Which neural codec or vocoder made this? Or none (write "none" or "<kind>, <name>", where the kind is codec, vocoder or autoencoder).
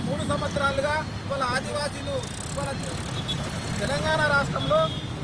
none